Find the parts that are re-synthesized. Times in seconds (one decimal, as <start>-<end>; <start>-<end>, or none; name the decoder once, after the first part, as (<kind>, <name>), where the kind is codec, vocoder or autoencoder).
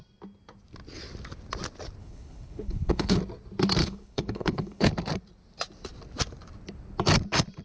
2.0-3.2 (codec, HILCodec); 3.8-4.9